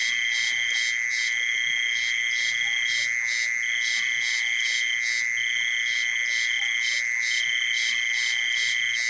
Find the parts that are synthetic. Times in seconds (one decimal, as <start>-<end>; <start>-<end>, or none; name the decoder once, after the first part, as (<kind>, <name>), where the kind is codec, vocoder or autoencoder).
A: none